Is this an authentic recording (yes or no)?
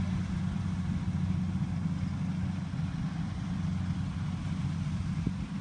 yes